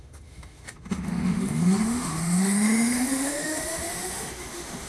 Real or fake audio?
fake